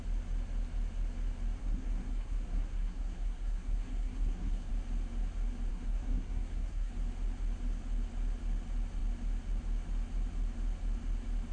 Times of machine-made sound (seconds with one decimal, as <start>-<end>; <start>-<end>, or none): 1.6-4.7; 5.7-6.9